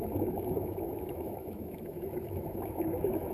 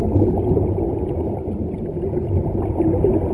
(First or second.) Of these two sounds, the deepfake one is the first